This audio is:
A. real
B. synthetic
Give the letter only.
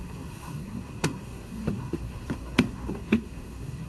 B